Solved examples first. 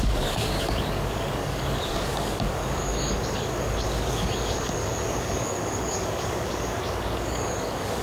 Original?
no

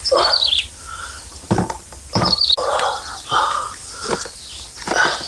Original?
yes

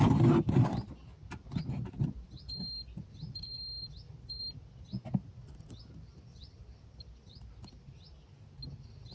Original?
yes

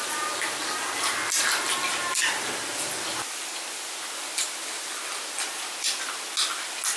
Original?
yes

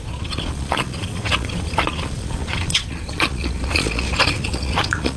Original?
no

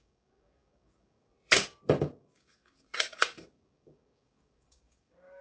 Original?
no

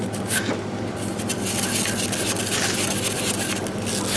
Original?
yes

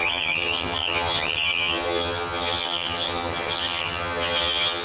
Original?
no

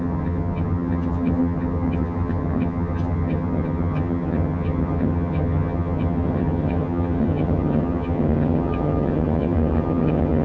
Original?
no